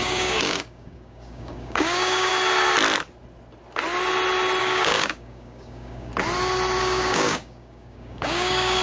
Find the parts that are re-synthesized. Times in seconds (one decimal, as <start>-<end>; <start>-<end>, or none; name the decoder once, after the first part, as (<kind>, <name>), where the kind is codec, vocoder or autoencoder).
0.0-2.3 (codec, DAC); 4.6-6.1; 6.8-8.8